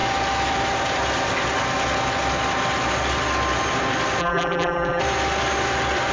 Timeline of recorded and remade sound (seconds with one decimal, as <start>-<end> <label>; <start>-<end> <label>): 0.0-4.2 recorded; 4.2-5.0 remade; 5.0-6.1 recorded